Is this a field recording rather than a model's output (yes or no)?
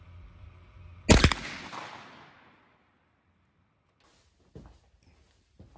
yes